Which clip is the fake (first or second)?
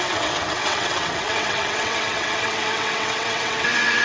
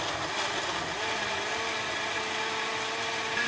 first